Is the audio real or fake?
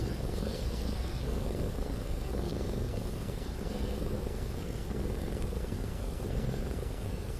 fake